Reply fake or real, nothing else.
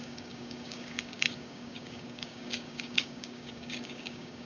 fake